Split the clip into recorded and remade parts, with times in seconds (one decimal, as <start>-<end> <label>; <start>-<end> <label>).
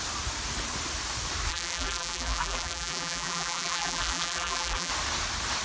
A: 0.0-1.5 recorded; 1.5-4.9 remade; 4.9-5.6 recorded